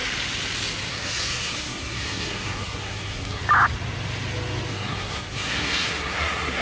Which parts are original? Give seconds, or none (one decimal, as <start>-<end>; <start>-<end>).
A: 0.0-0.9; 3.4-4.7